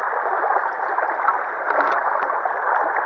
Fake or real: real